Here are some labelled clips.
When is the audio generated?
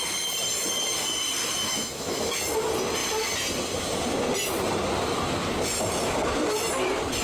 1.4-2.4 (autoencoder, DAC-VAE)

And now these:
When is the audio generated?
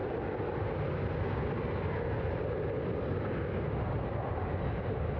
none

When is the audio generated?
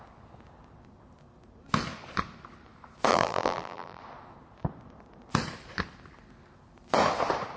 3.1-4.0 (vocoder, BigVGAN v2)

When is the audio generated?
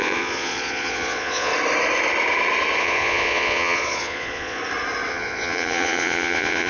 0.0-1.5 (vocoder, Vocos); 2.8-4.6; 5.1-6.7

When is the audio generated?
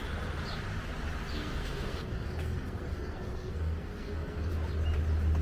1.3-4.5 (codec, SNAC)